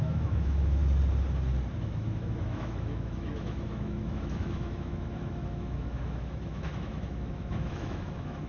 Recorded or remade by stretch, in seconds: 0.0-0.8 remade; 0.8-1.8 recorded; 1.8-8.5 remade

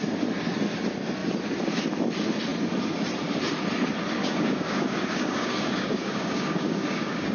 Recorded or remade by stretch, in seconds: 0.0-4.2 recorded; 4.2-7.3 remade

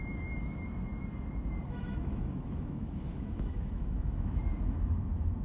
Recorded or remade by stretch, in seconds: 0.0-5.4 remade